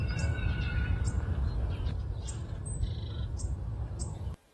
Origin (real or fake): real